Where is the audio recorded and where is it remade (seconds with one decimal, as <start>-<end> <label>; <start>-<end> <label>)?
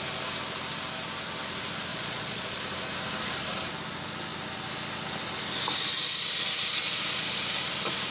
0.0-1.9 recorded; 1.9-2.6 remade; 2.6-8.1 recorded